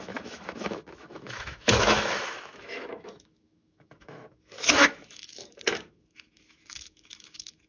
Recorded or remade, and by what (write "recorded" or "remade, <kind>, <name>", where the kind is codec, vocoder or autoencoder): remade, autoencoder, DAC-VAE